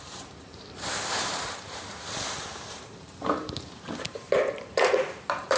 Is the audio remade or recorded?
remade